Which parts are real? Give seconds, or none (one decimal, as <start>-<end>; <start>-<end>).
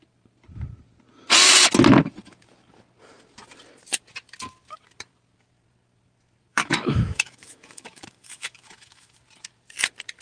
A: 0.0-6.5; 9.1-10.2